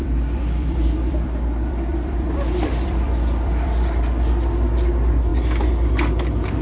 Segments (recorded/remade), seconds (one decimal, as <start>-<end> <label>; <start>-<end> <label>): 0.0-4.0 remade; 4.0-6.6 recorded